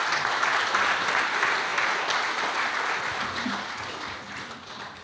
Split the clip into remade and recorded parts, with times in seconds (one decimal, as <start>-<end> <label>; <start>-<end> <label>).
0.0-5.0 recorded